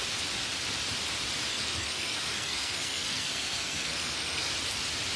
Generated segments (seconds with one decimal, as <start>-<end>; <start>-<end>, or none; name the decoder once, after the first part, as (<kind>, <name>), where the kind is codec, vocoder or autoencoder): 1.5-4.5 (codec, SNAC)